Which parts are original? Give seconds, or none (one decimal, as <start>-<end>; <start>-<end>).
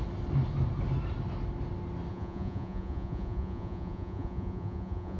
0.0-2.1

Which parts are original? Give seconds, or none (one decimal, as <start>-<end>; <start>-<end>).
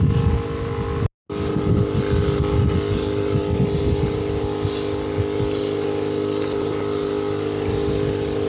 0.0-8.5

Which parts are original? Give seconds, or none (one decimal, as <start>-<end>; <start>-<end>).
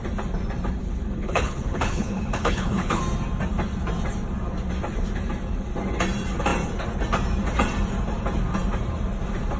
0.0-0.8; 3.0-9.6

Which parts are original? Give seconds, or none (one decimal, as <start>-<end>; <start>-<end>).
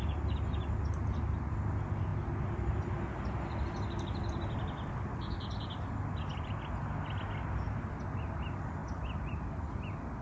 0.0-8.8; 9.7-10.2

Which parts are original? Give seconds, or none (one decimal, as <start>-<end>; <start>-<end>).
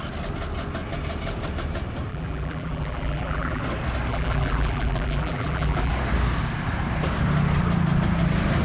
0.0-2.1; 3.6-4.1; 5.9-8.6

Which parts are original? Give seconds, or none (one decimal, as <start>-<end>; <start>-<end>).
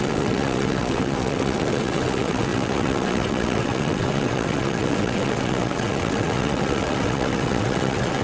none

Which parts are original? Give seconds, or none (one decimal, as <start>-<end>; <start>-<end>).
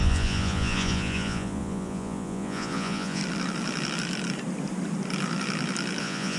3.2-6.0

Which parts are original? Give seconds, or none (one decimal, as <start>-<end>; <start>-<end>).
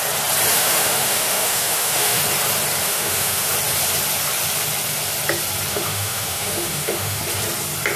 0.0-0.5; 2.2-2.8; 3.5-5.7; 7.2-8.0